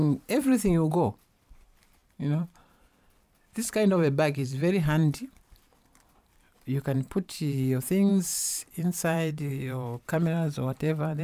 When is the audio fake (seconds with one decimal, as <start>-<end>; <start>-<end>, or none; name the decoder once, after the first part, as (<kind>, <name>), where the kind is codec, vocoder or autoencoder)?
0.0-11.2 (vocoder, BigVGAN v2)